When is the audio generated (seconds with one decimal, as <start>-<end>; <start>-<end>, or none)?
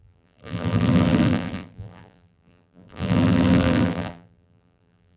0.0-5.2